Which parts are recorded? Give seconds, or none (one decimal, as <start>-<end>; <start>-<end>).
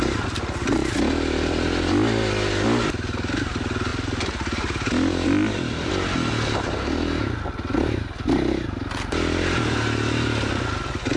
0.0-11.2